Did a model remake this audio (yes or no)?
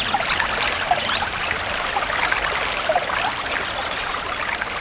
yes